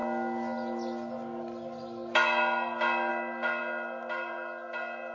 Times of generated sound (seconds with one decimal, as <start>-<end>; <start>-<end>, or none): none

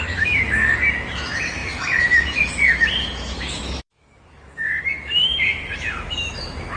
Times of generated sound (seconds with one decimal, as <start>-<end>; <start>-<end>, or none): 0.0-6.8

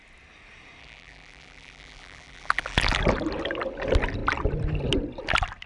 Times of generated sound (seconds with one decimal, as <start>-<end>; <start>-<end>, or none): 0.8-3.0

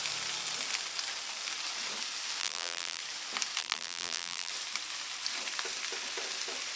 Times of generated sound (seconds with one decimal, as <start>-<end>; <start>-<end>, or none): 2.4-3.0; 3.6-4.5

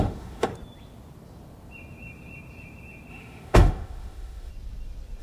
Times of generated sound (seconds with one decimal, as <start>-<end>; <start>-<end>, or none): 0.0-0.5; 3.1-4.5

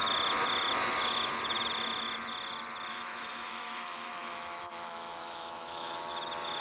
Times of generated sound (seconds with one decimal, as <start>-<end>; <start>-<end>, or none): 2.9-6.0

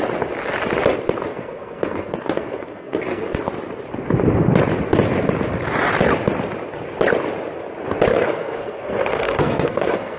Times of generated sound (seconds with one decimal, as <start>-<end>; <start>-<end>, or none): 1.3-3.5; 8.1-10.2

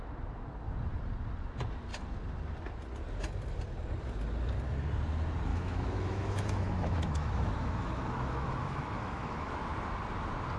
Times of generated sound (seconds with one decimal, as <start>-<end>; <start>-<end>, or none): 5.5-9.6